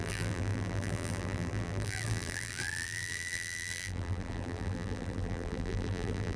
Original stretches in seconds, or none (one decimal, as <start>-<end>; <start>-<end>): none